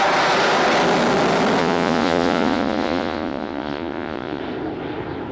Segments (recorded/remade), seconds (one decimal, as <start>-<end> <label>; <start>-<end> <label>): 0.0-1.6 recorded; 1.6-4.4 remade; 4.4-5.3 recorded